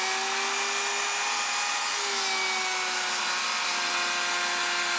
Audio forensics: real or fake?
real